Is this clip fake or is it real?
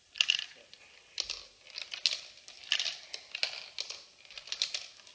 real